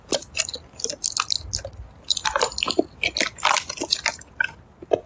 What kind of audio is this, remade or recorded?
recorded